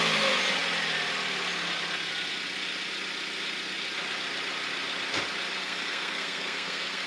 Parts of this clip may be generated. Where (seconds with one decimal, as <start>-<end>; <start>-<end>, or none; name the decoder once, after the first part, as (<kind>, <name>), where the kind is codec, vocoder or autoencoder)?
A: 5.6-7.1 (codec, SNAC)

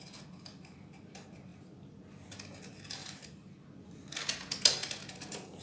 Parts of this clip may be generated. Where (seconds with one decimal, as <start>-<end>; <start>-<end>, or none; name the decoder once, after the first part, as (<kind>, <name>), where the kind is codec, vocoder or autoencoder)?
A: 3.0-3.6 (vocoder, BigVGAN v2)

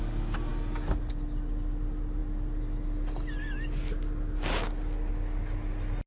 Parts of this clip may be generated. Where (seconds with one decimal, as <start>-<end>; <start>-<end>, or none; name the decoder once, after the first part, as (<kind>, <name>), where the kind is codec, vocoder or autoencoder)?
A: none

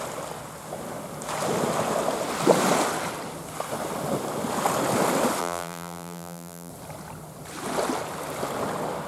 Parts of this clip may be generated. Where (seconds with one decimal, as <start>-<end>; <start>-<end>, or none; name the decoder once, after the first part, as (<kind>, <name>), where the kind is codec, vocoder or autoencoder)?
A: 5.4-6.7 (vocoder, BigVGAN v2)

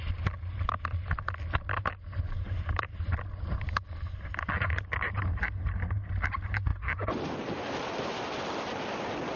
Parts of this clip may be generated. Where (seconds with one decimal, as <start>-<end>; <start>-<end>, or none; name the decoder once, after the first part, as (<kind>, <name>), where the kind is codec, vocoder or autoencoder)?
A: none

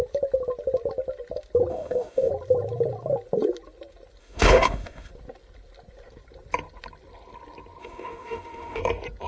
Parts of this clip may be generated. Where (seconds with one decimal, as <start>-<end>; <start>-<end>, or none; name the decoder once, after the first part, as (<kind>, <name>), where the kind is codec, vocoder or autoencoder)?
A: 1.7-2.3 (autoencoder, DAC-VAE); 4.2-5.1; 7.8-8.8

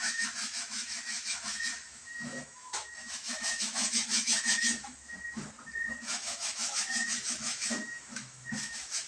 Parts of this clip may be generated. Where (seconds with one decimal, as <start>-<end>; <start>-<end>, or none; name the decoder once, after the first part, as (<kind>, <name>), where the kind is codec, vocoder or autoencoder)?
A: 0.0-5.0 (autoencoder, DAC-VAE); 5.9-9.1